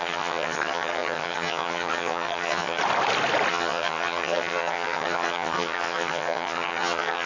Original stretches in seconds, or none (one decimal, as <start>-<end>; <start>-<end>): 2.8-3.5